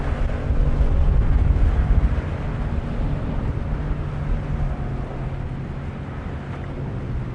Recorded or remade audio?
recorded